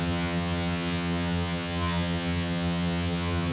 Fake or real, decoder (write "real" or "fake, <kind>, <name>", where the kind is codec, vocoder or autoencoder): fake, vocoder, HiFi-GAN